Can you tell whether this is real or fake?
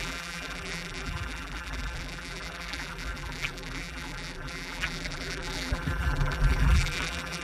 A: fake